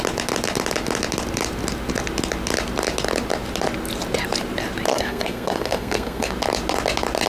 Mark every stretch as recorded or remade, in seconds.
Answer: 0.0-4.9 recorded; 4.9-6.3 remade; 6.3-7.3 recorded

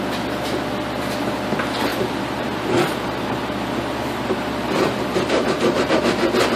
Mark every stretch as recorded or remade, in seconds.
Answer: 0.0-1.9 recorded; 1.9-5.9 remade; 5.9-6.6 recorded

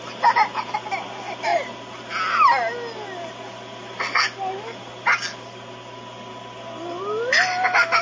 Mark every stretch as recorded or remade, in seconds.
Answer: 0.0-8.0 recorded